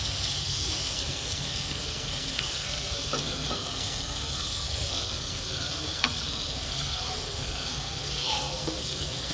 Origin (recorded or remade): remade